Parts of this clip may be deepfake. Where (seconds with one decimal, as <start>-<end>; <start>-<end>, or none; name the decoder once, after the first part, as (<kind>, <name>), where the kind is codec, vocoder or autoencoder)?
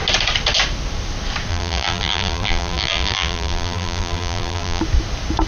1.5-4.8 (vocoder, BigVGAN v2)